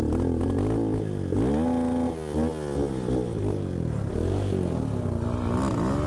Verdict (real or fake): real